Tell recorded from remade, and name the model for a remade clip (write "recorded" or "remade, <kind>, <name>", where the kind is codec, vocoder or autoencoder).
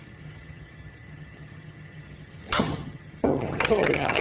remade, vocoder, HiFi-GAN